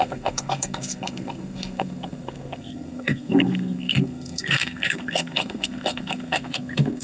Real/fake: fake